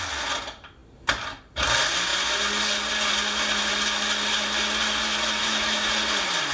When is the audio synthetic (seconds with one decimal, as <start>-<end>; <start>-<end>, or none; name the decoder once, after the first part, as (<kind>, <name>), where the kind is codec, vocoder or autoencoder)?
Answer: 5.4-5.9 (autoencoder, DAC-VAE)